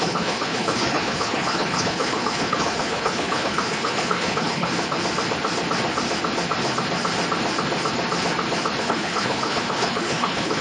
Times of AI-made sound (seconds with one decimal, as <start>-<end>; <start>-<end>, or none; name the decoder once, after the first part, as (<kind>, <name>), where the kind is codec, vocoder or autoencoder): 0.0-4.7 (codec, HILCodec); 8.8-10.6